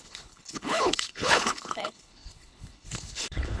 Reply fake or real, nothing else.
fake